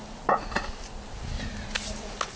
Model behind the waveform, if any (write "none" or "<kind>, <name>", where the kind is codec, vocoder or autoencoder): none